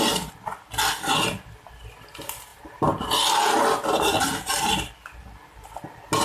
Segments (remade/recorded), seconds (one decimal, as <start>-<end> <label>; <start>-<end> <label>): 0.0-6.2 recorded